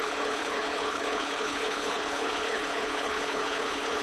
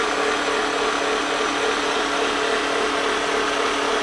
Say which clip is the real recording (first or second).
second